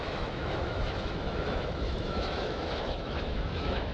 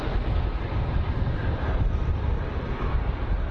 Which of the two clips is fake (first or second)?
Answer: first